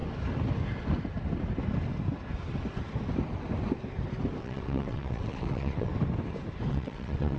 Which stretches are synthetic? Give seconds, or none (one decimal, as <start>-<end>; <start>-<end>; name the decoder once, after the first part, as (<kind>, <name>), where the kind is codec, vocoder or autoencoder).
4.4-5.9 (vocoder, WaveNeXt); 6.7-7.4